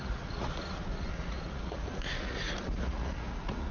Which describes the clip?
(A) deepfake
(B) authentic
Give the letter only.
A